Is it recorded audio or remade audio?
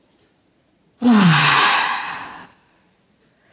remade